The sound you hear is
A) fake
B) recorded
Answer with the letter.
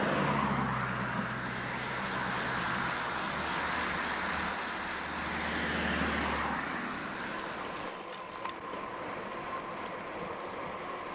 B